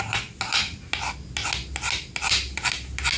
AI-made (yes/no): no